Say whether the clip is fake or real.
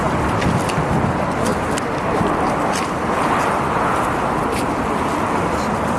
real